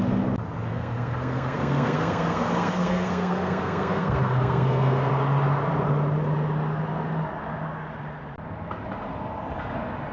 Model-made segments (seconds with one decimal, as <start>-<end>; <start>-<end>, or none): 0.7-5.1